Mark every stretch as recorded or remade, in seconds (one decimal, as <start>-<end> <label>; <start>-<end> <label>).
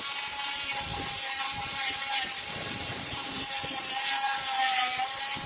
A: 0.0-5.5 remade